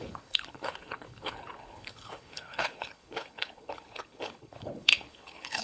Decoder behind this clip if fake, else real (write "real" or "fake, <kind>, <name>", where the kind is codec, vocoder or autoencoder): fake, codec, HILCodec